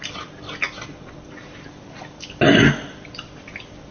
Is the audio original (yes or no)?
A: yes